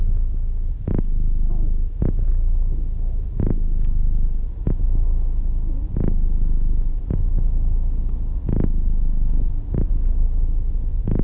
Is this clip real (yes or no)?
yes